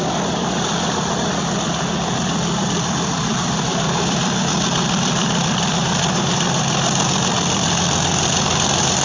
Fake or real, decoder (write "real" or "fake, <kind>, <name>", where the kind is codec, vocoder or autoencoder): fake, vocoder, BigVGAN v2